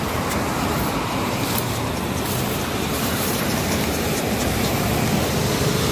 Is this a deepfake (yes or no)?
yes